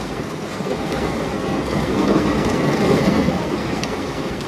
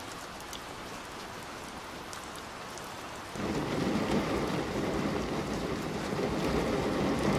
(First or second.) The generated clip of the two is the first